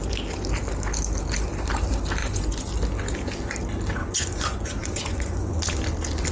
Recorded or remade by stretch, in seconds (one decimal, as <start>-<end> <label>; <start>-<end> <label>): 0.0-2.2 recorded; 2.2-2.7 remade; 2.7-4.0 recorded; 4.0-5.5 remade; 5.5-6.3 recorded